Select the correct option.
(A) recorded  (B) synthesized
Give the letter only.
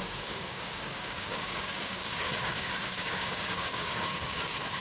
B